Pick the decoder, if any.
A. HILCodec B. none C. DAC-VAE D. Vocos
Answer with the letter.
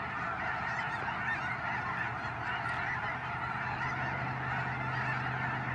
B